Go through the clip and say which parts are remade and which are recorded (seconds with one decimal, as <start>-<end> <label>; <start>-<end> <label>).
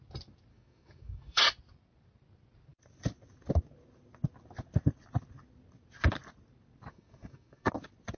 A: 0.0-0.5 recorded; 0.5-1.5 remade; 1.5-6.9 recorded; 6.9-7.7 remade; 7.7-8.2 recorded